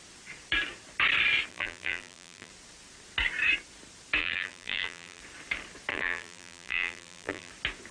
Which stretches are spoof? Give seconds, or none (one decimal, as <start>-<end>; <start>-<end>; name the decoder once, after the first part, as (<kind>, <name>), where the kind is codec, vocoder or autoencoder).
1.5-2.5 (vocoder, BigVGAN v2); 4.2-5.2; 5.9-7.5